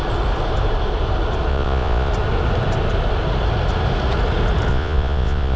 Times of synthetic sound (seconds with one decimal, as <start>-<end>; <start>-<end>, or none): 1.5-2.1; 4.7-5.6